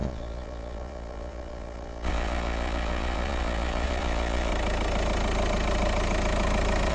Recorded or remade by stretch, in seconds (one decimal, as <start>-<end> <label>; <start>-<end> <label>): 0.0-4.5 remade; 4.5-6.9 recorded